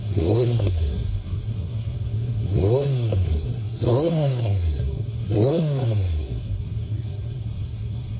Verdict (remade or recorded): remade